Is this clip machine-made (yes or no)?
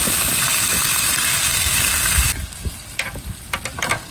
no